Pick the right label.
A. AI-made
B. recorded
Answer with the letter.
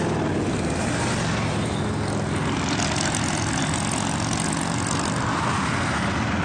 B